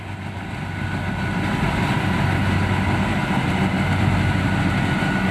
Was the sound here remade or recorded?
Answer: recorded